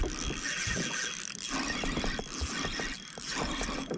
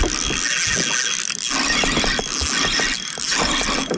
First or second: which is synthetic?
first